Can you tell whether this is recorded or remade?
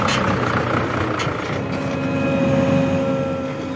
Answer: recorded